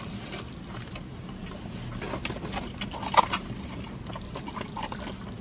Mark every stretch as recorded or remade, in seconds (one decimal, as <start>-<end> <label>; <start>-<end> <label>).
0.0-5.4 recorded